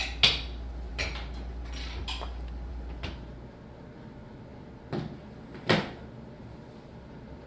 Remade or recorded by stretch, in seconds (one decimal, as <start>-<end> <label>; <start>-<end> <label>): 0.0-7.5 recorded